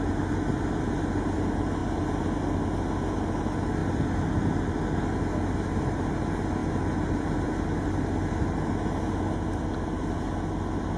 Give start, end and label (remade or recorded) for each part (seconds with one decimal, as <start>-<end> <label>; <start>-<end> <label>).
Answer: 0.0-11.0 recorded